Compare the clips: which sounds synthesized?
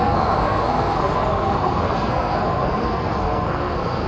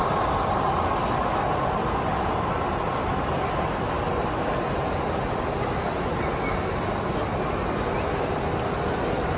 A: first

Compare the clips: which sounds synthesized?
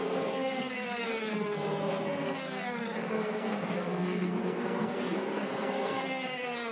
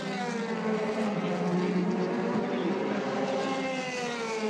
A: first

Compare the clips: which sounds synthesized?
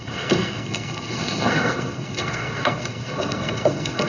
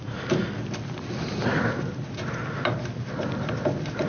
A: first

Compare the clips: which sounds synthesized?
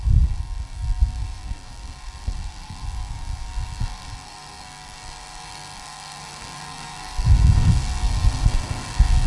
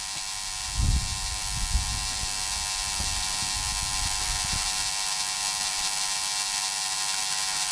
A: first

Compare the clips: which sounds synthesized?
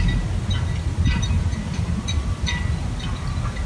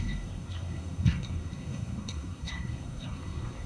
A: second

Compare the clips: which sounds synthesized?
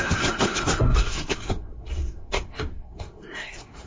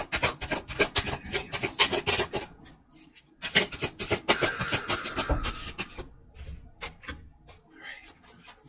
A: first